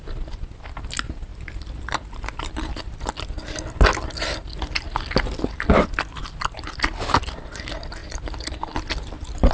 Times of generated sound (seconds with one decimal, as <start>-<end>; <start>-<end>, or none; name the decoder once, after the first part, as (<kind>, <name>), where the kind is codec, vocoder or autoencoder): none

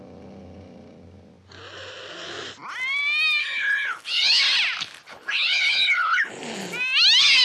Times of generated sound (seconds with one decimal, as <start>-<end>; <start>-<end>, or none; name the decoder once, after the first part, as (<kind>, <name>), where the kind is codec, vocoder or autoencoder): 3.4-4.4 (codec, HILCodec); 5.1-6.3

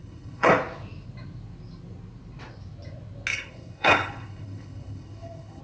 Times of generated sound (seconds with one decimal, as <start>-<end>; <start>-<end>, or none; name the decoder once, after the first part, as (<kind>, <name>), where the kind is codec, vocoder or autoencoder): 0.0-0.5 (codec, HILCodec); 3.3-5.6

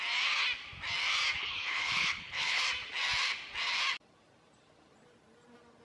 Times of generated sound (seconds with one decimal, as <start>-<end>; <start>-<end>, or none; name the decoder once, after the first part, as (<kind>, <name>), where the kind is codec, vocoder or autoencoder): 1.4-2.6 (codec, HILCodec)

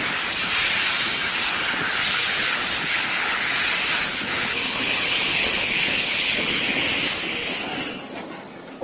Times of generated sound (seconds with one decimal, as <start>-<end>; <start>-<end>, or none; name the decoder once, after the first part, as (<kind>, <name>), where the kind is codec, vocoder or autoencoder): 1.3-3.5 (codec, HILCodec); 4.1-6.8